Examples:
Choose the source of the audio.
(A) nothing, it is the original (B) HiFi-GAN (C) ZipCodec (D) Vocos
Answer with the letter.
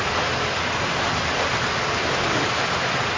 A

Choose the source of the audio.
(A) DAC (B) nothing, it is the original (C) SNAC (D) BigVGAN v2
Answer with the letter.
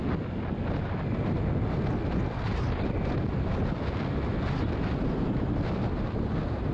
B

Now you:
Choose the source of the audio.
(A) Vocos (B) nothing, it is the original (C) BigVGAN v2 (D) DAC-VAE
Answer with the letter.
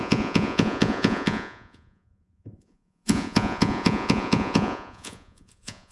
A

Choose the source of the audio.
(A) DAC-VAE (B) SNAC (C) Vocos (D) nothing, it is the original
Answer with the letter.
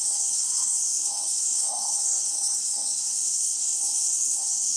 B